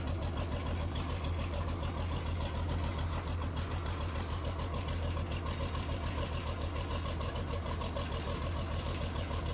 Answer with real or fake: real